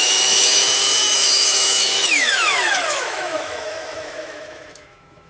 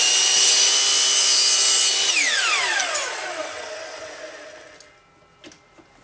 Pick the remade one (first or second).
first